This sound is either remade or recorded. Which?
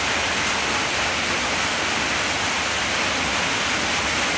recorded